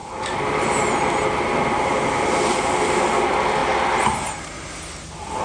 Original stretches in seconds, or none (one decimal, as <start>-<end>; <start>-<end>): 0.0-5.4